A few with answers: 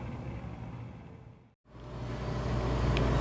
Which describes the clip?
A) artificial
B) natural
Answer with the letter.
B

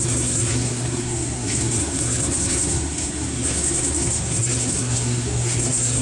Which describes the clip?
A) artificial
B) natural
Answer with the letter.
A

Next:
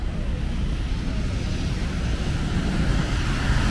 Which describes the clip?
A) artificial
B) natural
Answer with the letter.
B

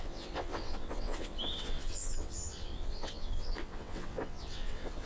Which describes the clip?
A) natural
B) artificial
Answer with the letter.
B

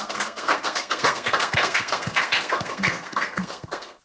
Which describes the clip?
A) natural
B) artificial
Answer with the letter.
B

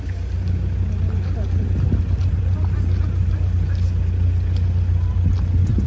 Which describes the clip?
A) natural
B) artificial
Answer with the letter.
A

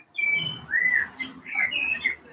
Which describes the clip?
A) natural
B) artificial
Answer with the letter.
A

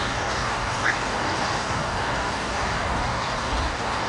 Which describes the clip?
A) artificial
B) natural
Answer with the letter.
A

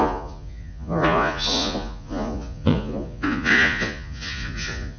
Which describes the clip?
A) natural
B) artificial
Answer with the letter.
B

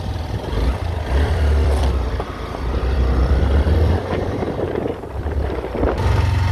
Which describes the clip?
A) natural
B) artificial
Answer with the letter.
B